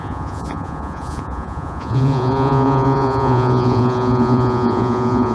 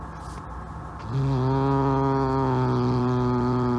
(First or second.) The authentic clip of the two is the second